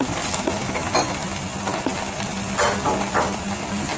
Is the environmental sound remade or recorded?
recorded